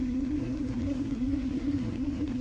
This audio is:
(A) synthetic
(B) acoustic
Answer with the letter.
A